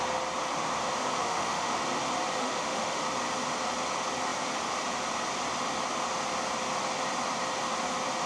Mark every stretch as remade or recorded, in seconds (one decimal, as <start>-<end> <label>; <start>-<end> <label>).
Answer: 0.0-1.2 recorded; 1.2-1.8 remade; 1.8-2.4 recorded; 2.4-3.0 remade; 3.0-8.3 recorded